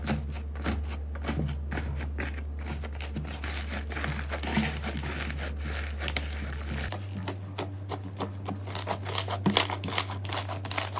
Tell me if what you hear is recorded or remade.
recorded